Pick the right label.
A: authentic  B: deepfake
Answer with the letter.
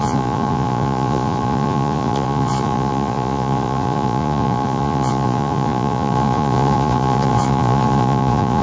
B